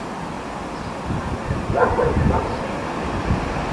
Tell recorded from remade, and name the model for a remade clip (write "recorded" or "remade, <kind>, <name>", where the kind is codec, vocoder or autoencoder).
recorded